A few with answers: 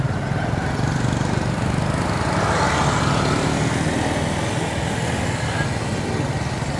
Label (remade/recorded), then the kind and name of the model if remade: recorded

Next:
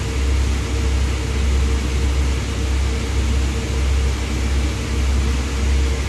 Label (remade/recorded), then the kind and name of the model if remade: recorded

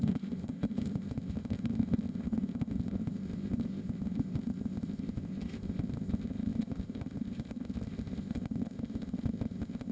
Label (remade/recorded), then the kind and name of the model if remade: remade, codec, ZipCodec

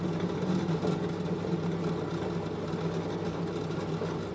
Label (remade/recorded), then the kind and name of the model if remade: recorded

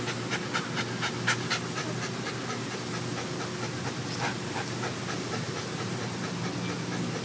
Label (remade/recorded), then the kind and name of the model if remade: recorded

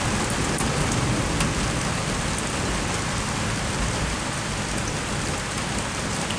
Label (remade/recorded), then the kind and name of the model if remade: recorded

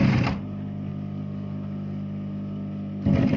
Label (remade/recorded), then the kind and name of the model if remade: recorded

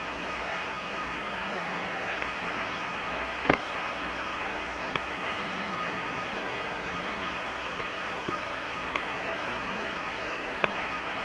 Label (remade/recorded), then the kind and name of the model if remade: remade, codec, SNAC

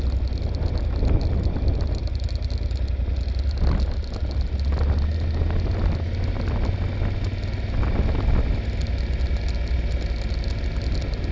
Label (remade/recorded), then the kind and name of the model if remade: recorded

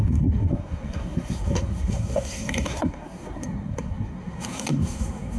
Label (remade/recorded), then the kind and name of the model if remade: remade, codec, SNAC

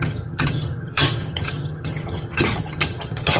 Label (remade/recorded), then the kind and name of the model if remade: remade, vocoder, HiFi-GAN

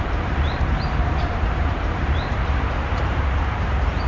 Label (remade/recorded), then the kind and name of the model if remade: remade, vocoder, BigVGAN v2